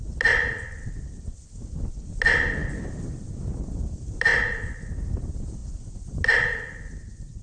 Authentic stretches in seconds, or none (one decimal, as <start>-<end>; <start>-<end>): 0.0-7.4